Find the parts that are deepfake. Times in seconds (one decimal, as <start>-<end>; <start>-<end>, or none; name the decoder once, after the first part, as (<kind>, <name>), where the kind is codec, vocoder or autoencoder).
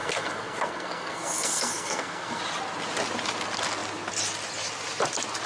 0.0-2.4 (codec, SNAC)